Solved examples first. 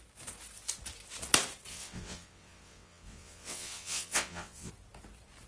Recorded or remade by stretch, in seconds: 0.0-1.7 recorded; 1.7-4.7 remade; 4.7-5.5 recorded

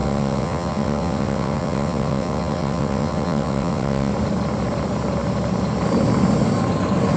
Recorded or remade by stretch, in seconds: 0.0-4.1 remade; 4.1-7.2 recorded

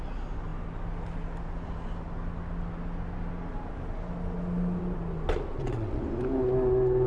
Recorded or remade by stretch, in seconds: 0.0-5.5 recorded; 5.5-6.0 remade; 6.0-7.1 recorded

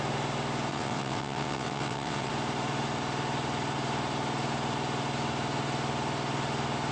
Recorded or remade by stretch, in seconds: 0.0-0.7 recorded; 0.7-2.3 remade; 2.3-6.9 recorded

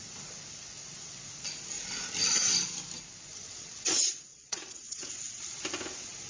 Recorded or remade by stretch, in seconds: 0.0-3.3 recorded; 3.3-3.9 remade; 3.9-4.3 recorded; 4.3-5.1 remade; 5.1-6.3 recorded

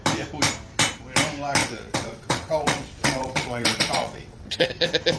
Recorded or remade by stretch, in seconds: 0.0-1.6 recorded; 1.6-4.7 remade; 4.7-5.2 recorded